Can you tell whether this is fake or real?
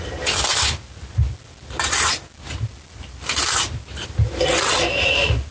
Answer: real